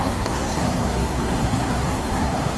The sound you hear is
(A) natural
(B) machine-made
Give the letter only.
B